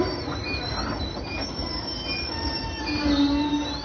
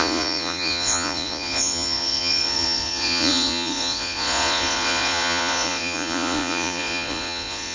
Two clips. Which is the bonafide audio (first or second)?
first